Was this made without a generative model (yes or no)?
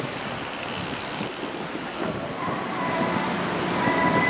yes